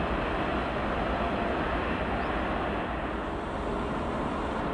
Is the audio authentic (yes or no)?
yes